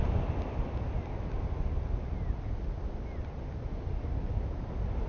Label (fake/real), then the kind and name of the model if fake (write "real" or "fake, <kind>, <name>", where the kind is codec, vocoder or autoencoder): real